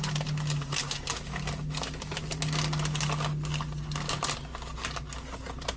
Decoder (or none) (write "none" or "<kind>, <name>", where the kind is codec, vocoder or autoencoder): none